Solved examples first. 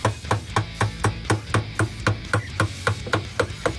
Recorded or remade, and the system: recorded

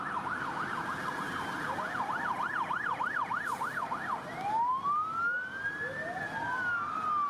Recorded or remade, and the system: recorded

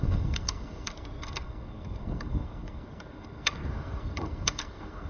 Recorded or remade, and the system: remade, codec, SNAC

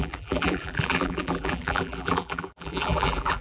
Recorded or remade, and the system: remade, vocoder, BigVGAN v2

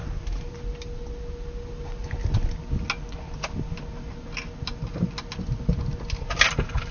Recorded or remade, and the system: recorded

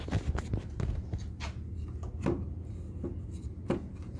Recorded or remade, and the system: recorded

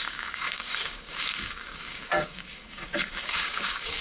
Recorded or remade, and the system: remade, codec, DAC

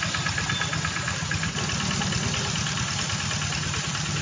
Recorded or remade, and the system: recorded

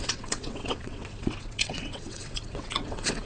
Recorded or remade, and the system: remade, vocoder, WaveNeXt